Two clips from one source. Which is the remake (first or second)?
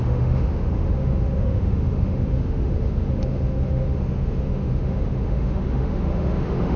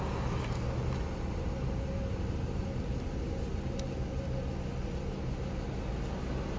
first